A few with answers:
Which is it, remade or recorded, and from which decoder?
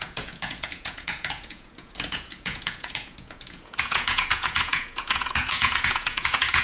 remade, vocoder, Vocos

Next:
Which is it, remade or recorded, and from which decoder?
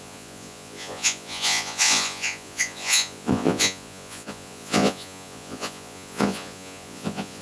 remade, vocoder, Vocos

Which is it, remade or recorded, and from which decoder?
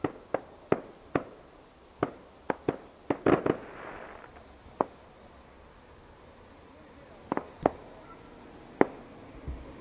recorded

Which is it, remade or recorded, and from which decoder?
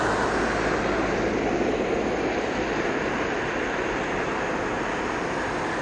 recorded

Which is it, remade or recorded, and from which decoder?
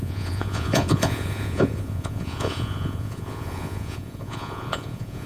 remade, vocoder, Vocos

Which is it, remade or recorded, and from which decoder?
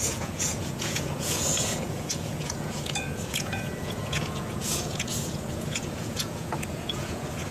remade, vocoder, Vocos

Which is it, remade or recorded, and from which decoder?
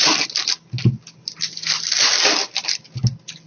recorded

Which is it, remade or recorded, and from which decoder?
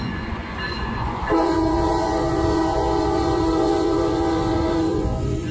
remade, vocoder, Vocos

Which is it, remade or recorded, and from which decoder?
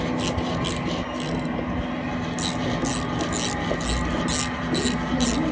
recorded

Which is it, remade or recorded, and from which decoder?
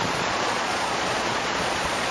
remade, vocoder, Vocos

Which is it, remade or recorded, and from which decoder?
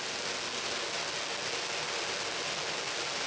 recorded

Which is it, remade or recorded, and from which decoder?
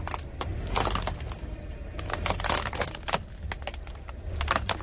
recorded